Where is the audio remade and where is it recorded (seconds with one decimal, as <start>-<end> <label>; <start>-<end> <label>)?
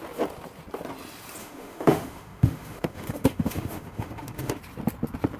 0.0-1.4 recorded; 1.4-4.6 remade; 4.6-5.4 recorded